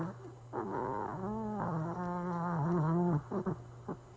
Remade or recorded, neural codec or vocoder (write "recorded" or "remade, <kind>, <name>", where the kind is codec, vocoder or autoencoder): recorded